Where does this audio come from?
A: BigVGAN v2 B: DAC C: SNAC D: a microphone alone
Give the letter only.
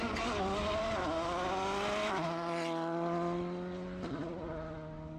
D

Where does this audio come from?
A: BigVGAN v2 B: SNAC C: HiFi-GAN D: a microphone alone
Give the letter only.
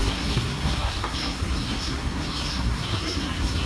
B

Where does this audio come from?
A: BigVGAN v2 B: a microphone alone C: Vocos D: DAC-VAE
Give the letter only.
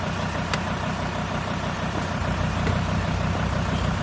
A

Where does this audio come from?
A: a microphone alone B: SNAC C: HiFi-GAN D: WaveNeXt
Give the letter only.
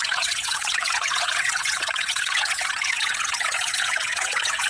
D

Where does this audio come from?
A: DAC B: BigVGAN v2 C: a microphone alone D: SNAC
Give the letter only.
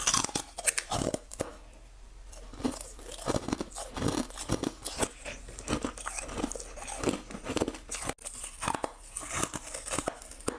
C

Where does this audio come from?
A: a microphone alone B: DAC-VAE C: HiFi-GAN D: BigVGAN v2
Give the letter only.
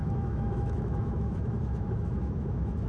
B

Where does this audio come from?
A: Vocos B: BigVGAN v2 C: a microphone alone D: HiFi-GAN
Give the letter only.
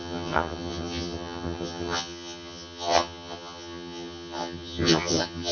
D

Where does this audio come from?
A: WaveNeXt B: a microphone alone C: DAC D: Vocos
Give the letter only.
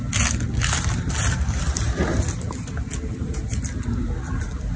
B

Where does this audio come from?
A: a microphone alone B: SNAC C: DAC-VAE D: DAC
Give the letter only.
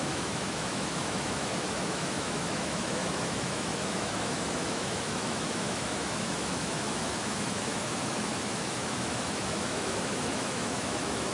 C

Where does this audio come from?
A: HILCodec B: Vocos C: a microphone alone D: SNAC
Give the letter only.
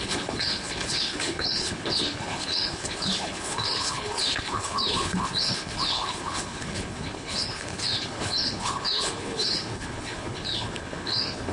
A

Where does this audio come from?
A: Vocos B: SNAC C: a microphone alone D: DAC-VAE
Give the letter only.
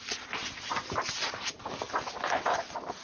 C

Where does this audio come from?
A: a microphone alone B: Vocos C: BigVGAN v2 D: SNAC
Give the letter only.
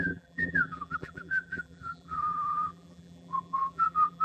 C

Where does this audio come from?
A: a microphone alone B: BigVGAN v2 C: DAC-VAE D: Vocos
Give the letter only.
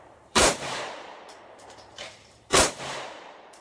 B